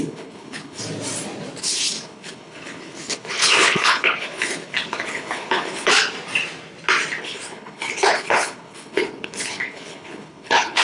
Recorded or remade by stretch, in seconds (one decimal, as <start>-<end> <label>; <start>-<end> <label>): 0.0-0.8 remade; 0.8-1.6 recorded; 1.6-5.9 remade; 5.9-7.2 recorded; 7.2-10.8 remade